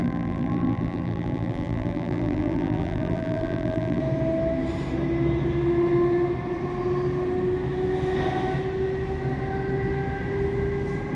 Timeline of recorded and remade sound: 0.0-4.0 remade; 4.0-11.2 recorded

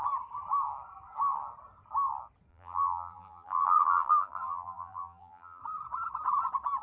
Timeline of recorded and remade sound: 0.0-2.5 recorded; 2.5-5.6 remade; 5.6-6.8 recorded

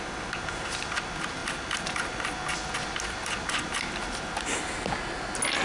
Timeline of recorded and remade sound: 0.0-5.6 recorded